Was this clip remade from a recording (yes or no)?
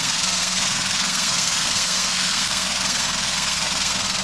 yes